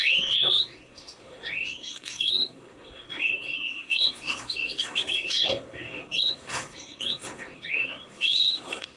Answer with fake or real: fake